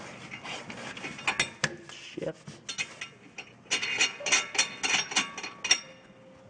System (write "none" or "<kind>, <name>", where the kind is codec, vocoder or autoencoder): none